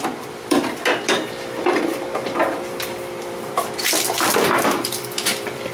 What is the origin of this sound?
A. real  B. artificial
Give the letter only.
B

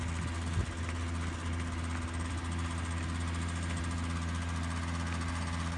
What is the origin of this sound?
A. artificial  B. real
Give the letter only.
B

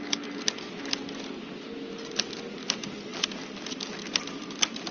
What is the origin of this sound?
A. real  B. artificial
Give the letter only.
A